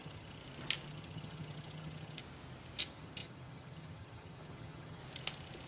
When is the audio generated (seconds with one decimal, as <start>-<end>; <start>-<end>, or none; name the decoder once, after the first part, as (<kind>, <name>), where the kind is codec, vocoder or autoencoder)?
0.0-0.4 (vocoder, HiFi-GAN); 0.9-2.2; 2.8-5.0